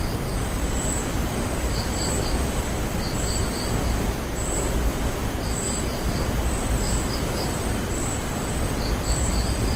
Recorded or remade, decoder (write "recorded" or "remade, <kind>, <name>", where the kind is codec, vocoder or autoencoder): recorded